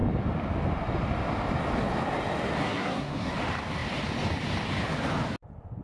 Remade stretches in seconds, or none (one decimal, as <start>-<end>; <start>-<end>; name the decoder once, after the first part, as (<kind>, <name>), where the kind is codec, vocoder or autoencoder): 2.6-3.3 (codec, SNAC)

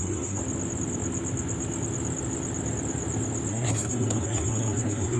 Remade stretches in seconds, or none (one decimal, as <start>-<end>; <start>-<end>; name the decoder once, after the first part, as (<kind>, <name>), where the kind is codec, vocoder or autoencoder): 0.0-0.4 (codec, SNAC); 3.5-5.2